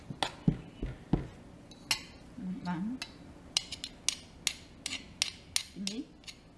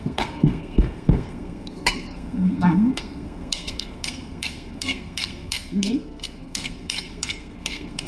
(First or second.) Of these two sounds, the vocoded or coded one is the second